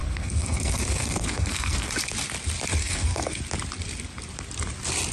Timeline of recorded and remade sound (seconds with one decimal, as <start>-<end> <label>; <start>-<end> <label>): 0.0-1.9 remade; 1.9-2.8 recorded; 2.8-3.4 remade; 3.4-5.1 recorded